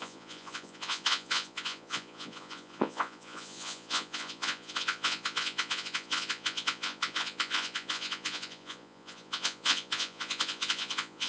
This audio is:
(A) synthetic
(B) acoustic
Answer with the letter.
A